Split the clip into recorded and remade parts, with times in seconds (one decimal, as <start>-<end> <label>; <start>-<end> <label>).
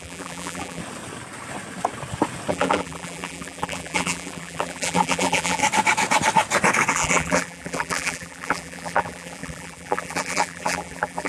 0.0-0.8 remade; 0.8-2.5 recorded; 2.5-5.6 remade; 5.6-6.9 recorded; 6.9-11.3 remade